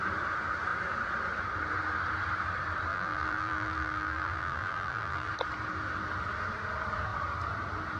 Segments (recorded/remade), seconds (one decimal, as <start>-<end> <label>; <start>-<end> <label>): 0.0-2.9 recorded; 2.9-5.3 remade; 5.3-8.0 recorded